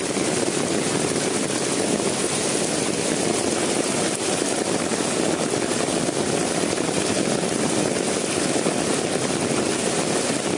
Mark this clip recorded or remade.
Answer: recorded